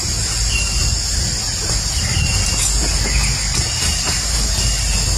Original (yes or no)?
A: yes